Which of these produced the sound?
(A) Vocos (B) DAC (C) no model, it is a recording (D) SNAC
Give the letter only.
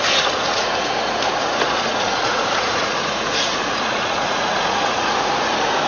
A